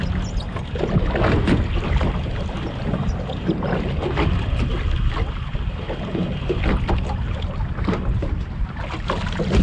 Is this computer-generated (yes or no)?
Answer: no